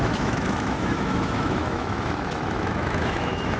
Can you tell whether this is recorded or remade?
remade